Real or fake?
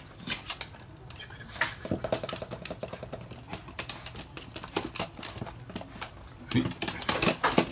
real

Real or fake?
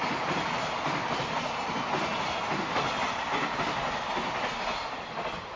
real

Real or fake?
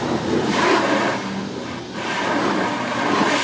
real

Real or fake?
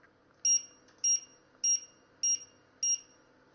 real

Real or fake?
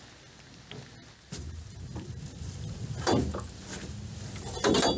real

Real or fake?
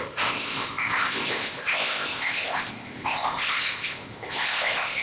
fake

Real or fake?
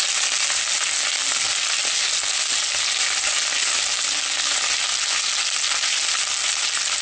real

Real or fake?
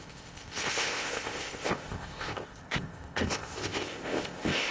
fake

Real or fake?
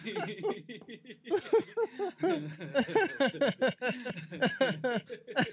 real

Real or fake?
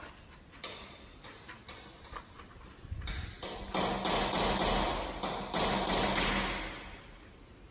real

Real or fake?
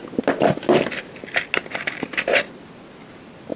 real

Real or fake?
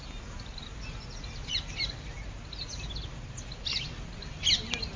real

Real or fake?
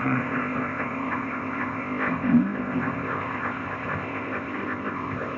fake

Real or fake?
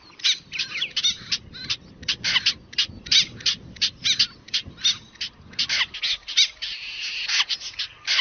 real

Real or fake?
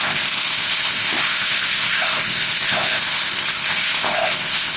fake